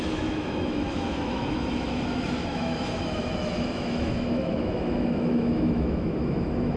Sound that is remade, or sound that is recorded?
remade